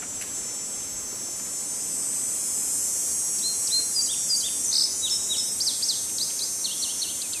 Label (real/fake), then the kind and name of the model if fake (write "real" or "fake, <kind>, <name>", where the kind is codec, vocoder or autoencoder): real